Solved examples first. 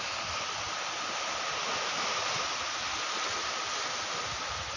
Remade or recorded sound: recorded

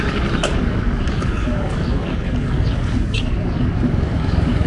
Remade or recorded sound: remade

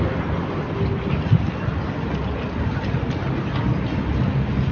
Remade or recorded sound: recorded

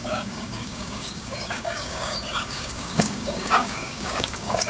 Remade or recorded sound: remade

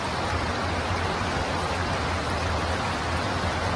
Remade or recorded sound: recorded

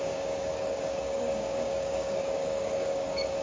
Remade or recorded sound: remade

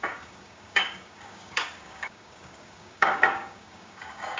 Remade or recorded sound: remade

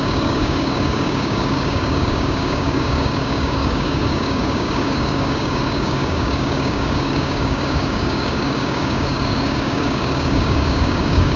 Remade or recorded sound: remade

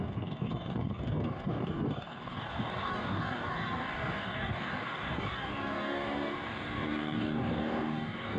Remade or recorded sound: remade